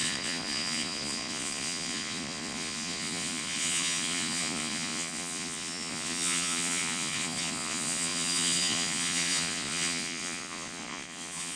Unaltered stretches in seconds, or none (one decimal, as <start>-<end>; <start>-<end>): none